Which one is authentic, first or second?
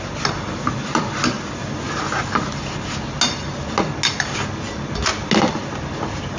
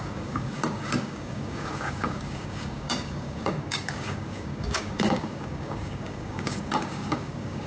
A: first